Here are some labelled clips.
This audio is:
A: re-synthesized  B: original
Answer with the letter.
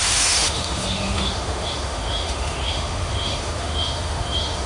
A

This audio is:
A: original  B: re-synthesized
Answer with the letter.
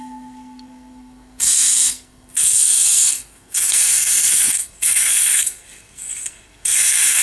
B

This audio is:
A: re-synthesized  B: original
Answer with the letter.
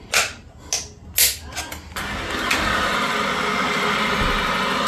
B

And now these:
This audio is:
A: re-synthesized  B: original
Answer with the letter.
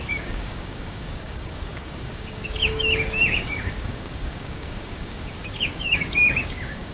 A